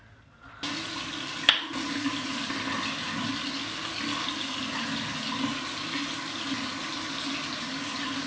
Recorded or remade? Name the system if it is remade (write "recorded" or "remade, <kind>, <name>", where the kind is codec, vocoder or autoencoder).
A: recorded